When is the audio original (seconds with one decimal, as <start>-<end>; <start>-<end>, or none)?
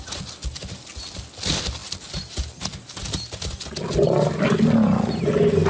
0.0-5.7